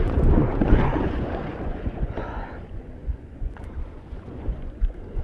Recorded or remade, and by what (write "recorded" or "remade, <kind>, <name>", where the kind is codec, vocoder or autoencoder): remade, vocoder, Vocos